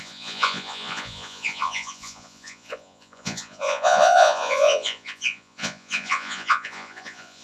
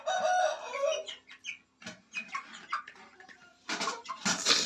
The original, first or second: second